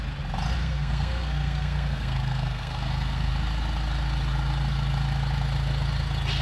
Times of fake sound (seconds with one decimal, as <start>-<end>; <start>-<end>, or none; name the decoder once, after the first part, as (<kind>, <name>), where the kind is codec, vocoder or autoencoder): 0.6-3.3 (codec, SNAC)

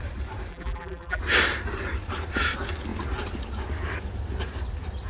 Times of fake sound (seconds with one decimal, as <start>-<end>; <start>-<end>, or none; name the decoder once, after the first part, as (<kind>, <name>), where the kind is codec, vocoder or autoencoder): 0.5-1.2 (vocoder, BigVGAN v2)

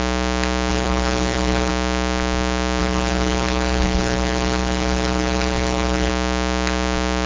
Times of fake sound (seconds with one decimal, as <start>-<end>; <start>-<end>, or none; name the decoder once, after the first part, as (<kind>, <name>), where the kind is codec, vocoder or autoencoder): 0.7-1.7 (codec, HILCodec); 2.8-6.1